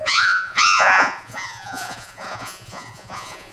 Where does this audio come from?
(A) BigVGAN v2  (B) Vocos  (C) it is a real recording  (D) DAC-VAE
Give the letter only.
B